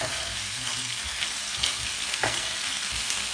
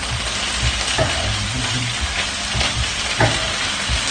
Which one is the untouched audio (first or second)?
second